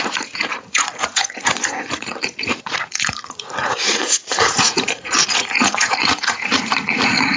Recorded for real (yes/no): no